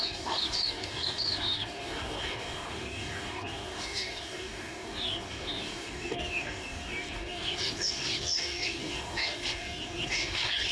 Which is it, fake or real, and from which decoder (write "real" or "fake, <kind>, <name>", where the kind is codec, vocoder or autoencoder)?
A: fake, codec, DAC